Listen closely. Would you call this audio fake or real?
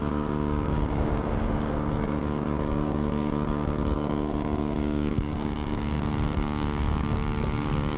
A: fake